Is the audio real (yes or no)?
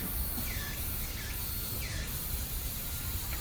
yes